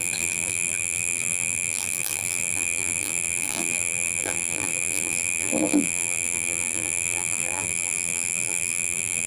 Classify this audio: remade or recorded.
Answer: remade